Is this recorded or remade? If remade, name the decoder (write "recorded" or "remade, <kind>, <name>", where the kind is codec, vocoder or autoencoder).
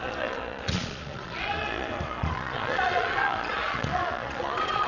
remade, vocoder, Vocos